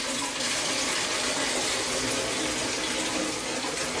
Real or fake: real